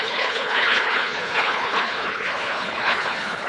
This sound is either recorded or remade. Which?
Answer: remade